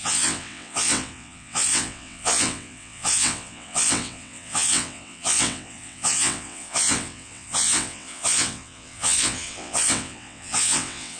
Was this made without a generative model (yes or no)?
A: no